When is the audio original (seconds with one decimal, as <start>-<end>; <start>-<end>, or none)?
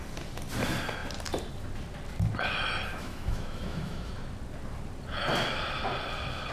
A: 0.0-2.9; 4.1-6.5